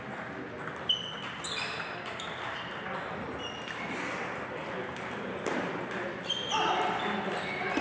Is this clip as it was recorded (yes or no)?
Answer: yes